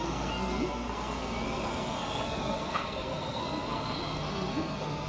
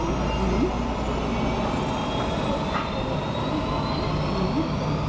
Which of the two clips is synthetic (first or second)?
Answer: first